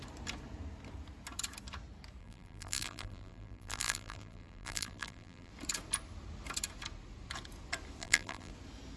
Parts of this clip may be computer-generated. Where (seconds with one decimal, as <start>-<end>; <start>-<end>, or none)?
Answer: 2.2-5.5; 8.0-8.5